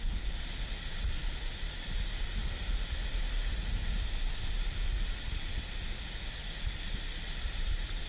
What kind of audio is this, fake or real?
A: real